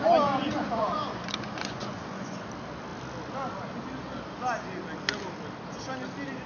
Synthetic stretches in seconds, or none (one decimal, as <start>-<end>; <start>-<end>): 0.4-2.4